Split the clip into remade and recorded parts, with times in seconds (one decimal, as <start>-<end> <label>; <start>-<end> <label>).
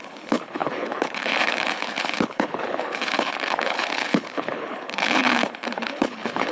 0.0-6.5 remade